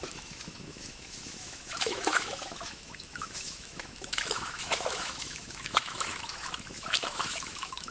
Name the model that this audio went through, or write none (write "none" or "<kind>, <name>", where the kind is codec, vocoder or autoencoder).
autoencoder, DAC-VAE